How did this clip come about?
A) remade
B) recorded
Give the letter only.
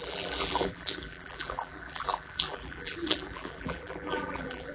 A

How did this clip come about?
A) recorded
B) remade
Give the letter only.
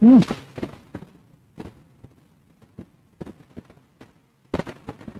A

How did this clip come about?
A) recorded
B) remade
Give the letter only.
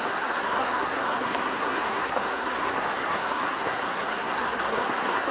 B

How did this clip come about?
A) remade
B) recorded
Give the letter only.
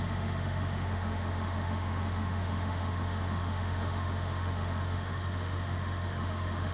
A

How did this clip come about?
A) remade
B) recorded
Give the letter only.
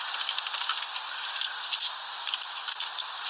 B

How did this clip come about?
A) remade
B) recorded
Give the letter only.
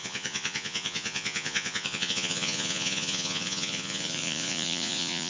A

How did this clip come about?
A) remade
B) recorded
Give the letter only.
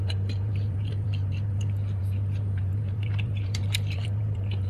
A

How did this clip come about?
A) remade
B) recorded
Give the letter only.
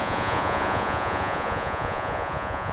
A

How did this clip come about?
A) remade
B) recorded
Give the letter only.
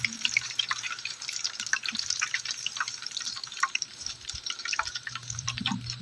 A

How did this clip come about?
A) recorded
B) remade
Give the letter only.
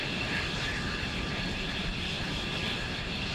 B